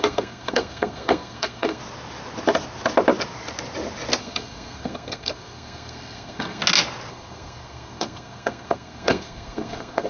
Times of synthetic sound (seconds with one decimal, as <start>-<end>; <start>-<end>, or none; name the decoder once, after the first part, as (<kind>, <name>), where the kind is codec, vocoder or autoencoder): 0.0-1.8 (codec, SNAC); 4.2-6.6; 7.1-10.1